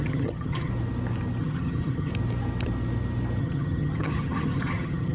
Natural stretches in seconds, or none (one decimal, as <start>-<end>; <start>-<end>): 0.7-1.4; 2.1-3.4